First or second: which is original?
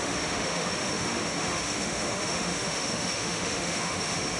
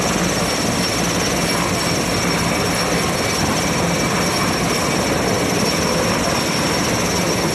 second